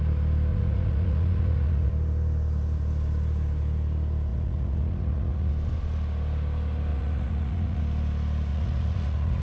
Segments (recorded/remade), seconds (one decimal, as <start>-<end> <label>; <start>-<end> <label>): 0.0-0.5 recorded; 0.5-1.9 remade; 1.9-4.3 recorded; 4.3-5.5 remade; 5.5-6.9 recorded; 6.9-7.8 remade; 7.8-8.5 recorded; 8.5-9.4 remade